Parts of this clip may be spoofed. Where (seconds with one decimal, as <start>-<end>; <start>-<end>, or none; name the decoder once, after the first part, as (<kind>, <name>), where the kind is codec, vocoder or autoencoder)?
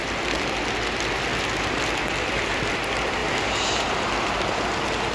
1.3-2.7 (vocoder, BigVGAN v2); 3.2-3.9